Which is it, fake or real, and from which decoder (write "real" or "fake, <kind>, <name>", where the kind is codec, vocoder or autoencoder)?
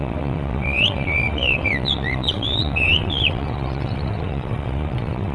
fake, vocoder, WaveNeXt